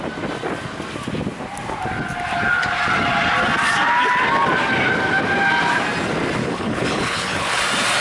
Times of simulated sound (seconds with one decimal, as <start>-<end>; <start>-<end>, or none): 6.4-7.6